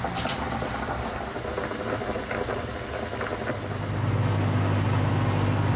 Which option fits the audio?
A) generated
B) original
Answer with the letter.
B